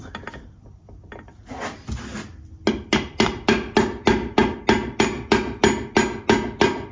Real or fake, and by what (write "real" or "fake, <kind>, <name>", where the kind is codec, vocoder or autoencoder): real